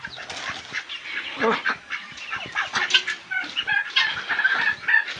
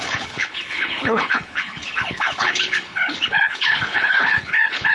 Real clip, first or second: first